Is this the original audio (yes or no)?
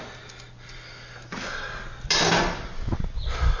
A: yes